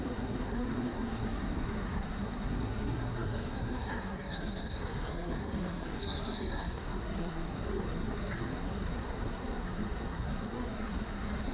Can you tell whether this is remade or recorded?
remade